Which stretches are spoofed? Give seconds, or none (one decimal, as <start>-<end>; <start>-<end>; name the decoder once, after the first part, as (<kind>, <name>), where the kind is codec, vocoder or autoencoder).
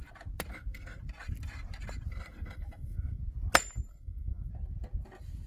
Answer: 0.5-1.0 (codec, SNAC); 2.1-3.2; 3.9-4.5